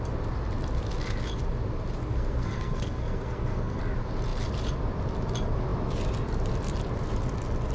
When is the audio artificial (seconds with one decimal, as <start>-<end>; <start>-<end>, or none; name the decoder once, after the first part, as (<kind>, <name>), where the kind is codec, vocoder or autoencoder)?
2.0-3.8 (codec, SNAC)